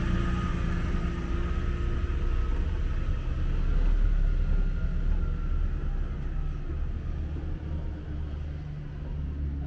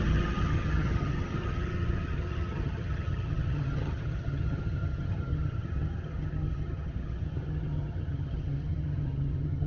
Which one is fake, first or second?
second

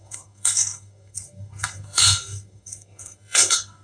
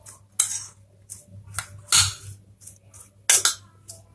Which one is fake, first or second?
first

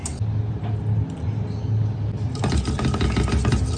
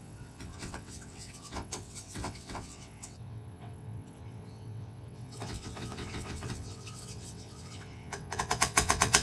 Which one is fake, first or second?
second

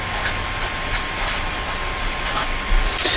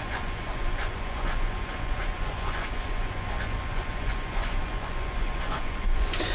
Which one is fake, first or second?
second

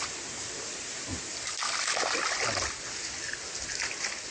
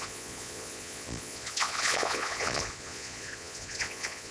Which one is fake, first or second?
second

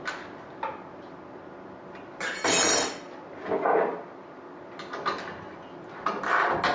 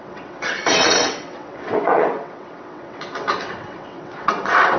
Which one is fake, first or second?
second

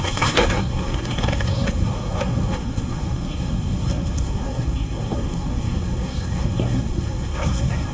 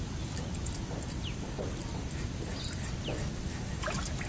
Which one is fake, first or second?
first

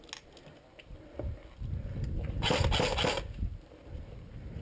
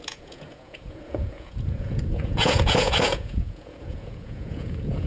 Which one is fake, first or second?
second